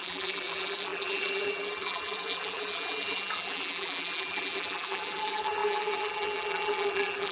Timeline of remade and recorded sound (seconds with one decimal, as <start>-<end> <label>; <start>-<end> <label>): 0.0-7.3 remade

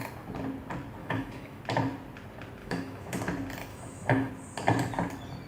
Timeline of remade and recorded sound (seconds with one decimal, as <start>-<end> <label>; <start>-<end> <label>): 0.0-1.0 recorded; 1.0-1.6 remade; 1.6-2.6 recorded; 2.6-3.2 remade; 3.2-3.7 recorded; 3.7-4.3 remade; 4.3-5.5 recorded

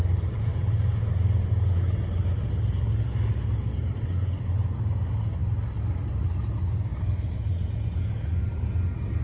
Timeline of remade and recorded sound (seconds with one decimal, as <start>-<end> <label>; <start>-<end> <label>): 0.0-9.2 recorded

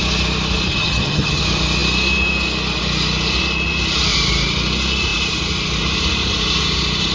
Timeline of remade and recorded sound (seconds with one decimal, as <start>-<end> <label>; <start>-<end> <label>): 0.0-0.7 recorded; 0.7-1.4 remade; 1.4-7.1 recorded